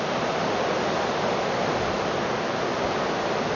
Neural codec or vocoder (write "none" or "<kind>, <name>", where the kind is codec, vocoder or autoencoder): none